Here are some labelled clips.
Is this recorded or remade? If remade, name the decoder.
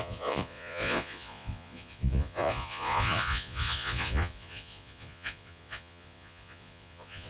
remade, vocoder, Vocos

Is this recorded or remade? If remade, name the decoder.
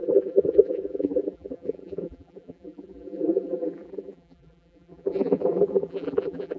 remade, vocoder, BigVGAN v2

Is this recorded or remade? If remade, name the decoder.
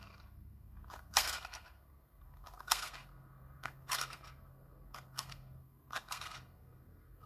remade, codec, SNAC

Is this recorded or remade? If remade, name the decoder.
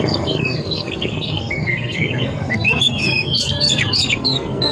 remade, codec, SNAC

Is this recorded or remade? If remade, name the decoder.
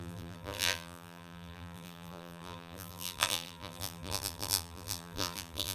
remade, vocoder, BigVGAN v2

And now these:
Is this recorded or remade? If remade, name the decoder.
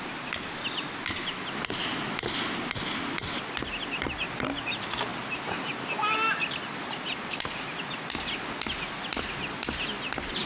recorded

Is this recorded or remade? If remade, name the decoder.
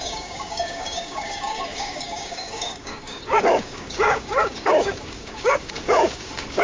remade, codec, DAC